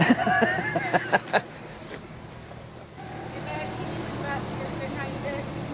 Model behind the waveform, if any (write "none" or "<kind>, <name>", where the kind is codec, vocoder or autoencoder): none